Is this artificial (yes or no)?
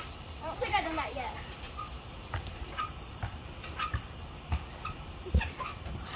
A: yes